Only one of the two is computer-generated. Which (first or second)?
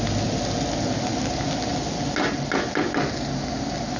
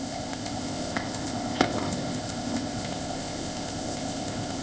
second